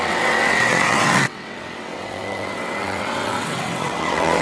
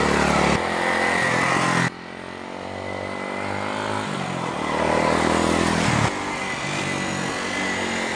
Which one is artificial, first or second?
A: first